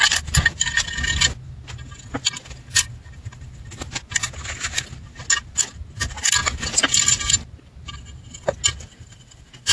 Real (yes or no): yes